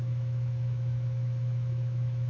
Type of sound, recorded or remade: remade